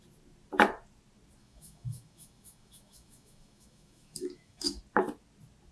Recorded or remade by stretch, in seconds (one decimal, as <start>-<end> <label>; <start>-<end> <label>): 0.0-1.4 recorded; 1.4-4.8 remade; 4.8-5.7 recorded